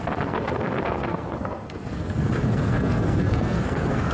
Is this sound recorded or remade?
remade